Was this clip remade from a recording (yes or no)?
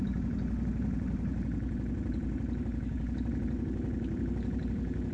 no